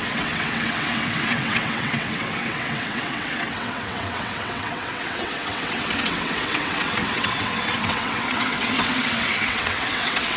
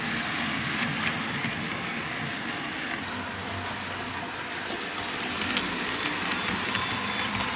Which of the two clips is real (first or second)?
second